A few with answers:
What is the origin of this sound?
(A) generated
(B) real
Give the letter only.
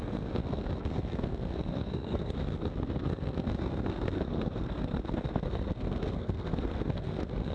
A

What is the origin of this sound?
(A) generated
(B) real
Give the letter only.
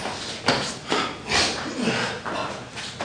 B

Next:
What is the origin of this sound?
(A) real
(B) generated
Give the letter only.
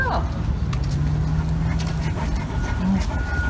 A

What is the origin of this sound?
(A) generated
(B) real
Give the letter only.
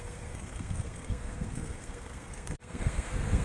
A